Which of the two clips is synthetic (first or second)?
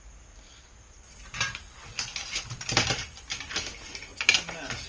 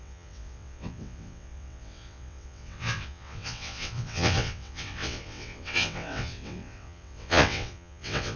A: second